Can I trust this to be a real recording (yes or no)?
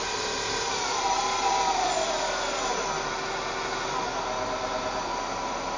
yes